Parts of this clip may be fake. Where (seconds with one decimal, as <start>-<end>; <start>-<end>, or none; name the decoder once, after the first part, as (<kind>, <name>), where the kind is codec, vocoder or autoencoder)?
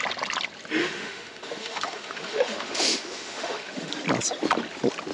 0.8-3.9 (autoencoder, DAC-VAE)